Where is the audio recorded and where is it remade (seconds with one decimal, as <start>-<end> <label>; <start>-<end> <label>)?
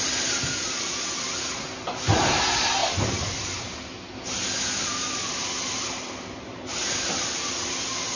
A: 0.0-8.2 recorded